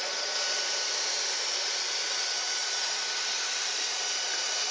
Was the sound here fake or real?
real